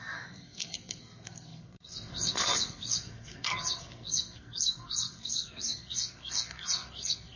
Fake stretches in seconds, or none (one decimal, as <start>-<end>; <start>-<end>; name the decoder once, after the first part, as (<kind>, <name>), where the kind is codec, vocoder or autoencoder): 0.0-7.4 (codec, SNAC)